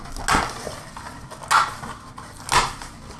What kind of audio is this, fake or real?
real